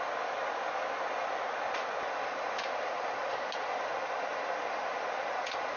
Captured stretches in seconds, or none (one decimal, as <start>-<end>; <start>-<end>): 0.0-5.8